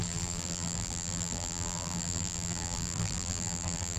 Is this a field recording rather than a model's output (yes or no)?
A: no